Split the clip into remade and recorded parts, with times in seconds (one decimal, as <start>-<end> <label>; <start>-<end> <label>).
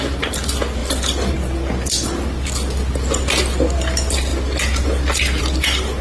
0.0-6.0 recorded